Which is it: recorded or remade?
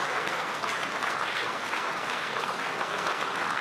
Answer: remade